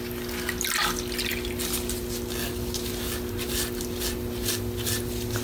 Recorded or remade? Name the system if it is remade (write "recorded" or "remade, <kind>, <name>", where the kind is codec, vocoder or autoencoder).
recorded